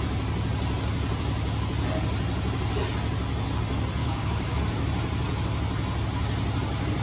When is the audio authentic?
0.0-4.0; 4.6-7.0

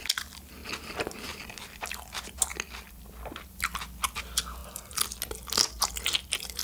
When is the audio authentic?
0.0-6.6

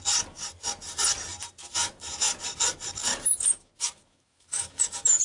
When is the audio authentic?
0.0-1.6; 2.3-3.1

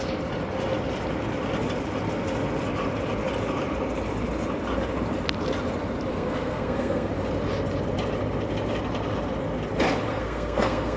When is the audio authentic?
0.0-6.1; 7.1-10.1